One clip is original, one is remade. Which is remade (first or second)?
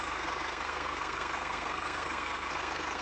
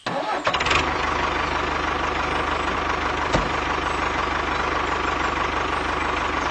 first